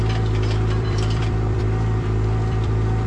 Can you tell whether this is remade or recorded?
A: remade